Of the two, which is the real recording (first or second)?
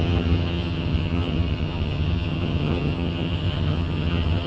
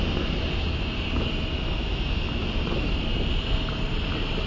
second